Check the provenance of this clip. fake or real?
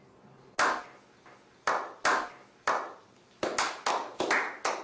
real